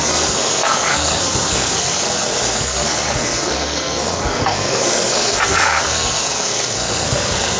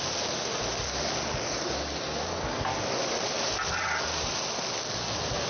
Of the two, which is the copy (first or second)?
first